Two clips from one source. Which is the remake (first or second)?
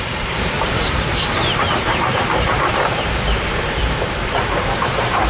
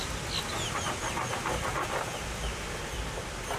first